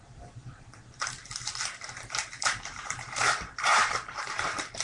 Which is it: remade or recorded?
remade